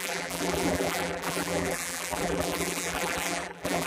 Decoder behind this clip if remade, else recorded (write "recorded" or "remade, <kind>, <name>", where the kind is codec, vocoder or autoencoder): remade, vocoder, BigVGAN v2